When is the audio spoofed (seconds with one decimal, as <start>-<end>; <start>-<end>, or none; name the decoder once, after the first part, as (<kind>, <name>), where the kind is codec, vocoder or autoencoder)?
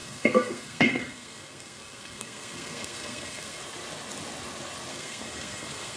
0.0-3.6 (codec, SNAC); 4.9-6.0